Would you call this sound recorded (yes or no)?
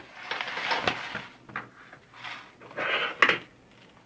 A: yes